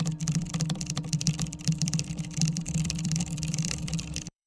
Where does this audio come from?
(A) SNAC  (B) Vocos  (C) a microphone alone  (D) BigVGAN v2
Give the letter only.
D